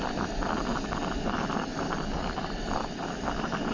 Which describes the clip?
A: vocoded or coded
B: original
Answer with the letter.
B